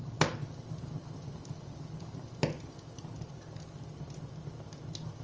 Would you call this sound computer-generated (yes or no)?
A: no